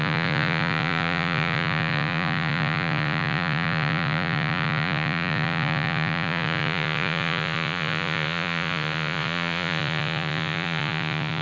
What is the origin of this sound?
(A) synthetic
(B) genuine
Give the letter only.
A